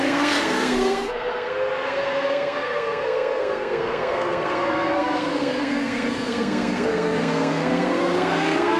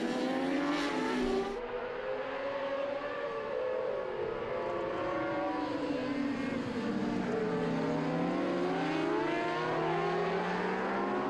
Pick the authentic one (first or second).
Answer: second